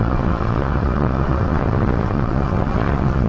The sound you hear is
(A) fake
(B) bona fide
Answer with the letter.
A